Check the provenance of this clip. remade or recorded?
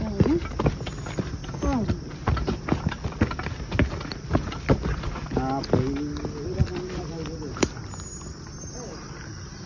recorded